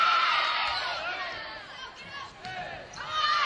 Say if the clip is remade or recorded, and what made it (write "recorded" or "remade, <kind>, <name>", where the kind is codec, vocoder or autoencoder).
recorded